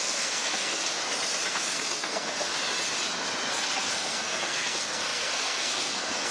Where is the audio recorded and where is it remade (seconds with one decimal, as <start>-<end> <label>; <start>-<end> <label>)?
0.0-0.8 remade; 0.8-1.5 recorded; 1.5-2.5 remade; 2.5-3.5 recorded; 3.5-6.3 remade